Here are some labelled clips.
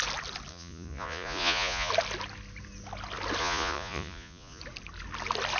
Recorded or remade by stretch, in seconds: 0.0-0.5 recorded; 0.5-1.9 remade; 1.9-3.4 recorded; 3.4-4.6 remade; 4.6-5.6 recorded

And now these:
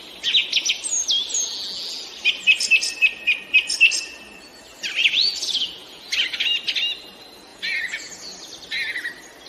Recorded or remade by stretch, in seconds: 0.0-5.0 recorded; 5.0-6.1 remade; 6.1-7.5 recorded; 7.5-8.2 remade; 8.2-9.5 recorded

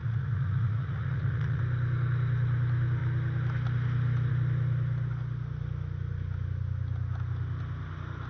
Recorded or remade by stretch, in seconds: 0.0-1.6 remade; 1.6-8.3 recorded

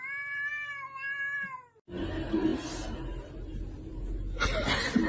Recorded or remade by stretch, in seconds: 0.0-5.1 recorded

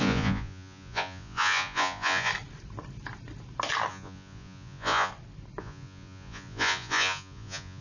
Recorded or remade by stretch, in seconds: 0.0-2.3 remade; 2.3-3.9 recorded; 3.9-5.1 remade; 5.1-5.6 recorded; 5.6-7.8 remade

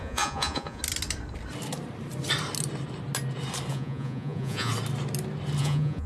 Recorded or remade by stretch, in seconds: 0.0-0.8 remade; 0.8-3.7 recorded; 3.7-4.7 remade; 4.7-5.6 recorded; 5.6-6.1 remade

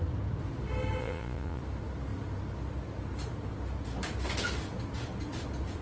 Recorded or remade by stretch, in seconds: 0.0-1.0 recorded; 1.0-1.6 remade; 1.6-5.8 recorded

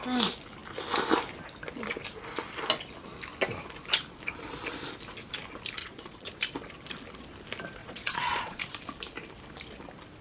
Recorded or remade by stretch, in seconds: 0.0-5.8 recorded; 5.8-6.3 remade; 6.3-7.8 recorded; 7.8-8.8 remade; 8.8-10.2 recorded